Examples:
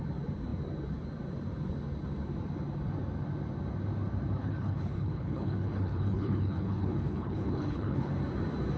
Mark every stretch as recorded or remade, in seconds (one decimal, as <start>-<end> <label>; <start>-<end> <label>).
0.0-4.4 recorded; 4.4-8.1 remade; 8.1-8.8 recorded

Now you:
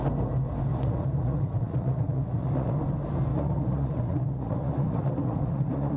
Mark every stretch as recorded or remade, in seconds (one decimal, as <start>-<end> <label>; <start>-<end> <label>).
0.0-0.7 recorded; 0.7-2.8 remade; 2.8-3.3 recorded; 3.3-6.0 remade

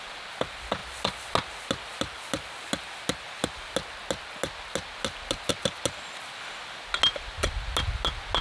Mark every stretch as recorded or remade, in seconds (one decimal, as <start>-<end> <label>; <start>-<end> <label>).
0.0-8.4 recorded

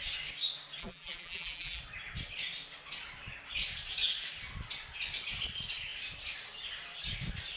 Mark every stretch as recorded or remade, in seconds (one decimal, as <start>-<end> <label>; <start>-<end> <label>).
0.0-0.8 recorded; 0.8-1.8 remade; 1.8-7.6 recorded

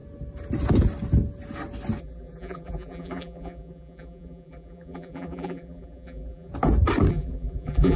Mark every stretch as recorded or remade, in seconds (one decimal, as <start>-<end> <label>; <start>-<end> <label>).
0.0-2.0 recorded; 2.0-6.5 remade; 6.5-7.1 recorded; 7.1-8.0 remade

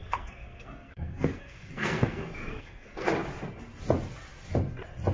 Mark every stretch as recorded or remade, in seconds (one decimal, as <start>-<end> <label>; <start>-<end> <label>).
0.0-3.1 remade; 3.1-5.1 recorded

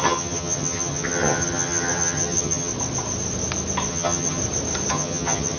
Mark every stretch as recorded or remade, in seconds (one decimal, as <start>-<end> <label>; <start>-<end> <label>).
0.0-2.7 remade; 2.7-3.9 recorded; 3.9-4.4 remade; 4.4-4.9 recorded; 4.9-5.6 remade

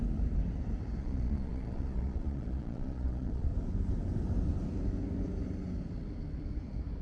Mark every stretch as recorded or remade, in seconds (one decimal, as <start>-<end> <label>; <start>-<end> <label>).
0.0-1.0 recorded; 1.0-3.5 remade; 3.5-7.0 recorded